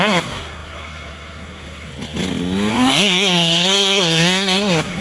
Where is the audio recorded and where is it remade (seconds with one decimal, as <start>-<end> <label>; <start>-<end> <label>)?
0.0-1.9 remade; 1.9-2.7 recorded; 2.7-5.0 remade